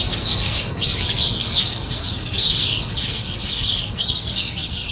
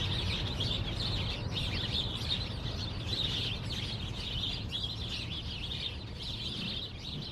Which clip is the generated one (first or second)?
first